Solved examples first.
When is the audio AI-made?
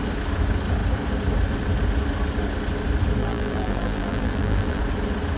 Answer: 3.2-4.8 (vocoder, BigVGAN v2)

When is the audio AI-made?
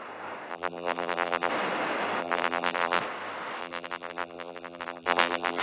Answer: 0.5-1.5 (vocoder, BigVGAN v2); 2.2-3.0; 3.6-5.6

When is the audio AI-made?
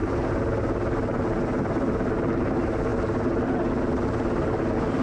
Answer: none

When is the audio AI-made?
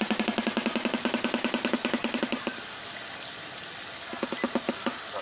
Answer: 2.0-2.6 (vocoder, BigVGAN v2)